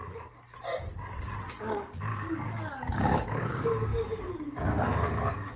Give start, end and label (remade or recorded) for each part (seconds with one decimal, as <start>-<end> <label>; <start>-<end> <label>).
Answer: 0.0-1.5 recorded; 1.5-2.1 remade; 2.1-2.9 recorded; 2.9-5.6 remade